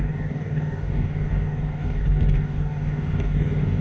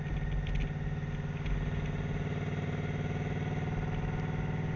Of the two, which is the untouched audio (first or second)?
second